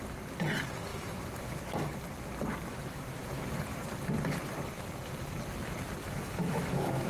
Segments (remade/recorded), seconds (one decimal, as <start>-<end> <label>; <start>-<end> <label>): 0.0-0.9 recorded; 0.9-1.6 remade; 1.6-2.7 recorded; 2.7-3.4 remade; 3.4-6.0 recorded; 6.0-7.1 remade